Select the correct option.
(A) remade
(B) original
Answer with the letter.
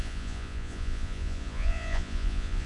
A